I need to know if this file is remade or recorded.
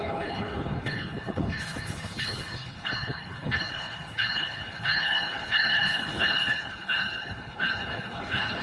remade